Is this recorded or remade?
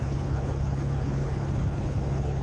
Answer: remade